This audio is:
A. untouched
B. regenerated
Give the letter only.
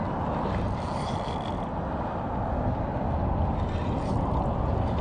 A